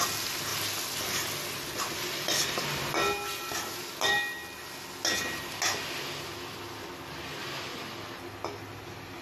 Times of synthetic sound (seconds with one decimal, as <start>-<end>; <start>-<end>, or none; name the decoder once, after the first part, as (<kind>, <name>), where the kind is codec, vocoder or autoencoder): none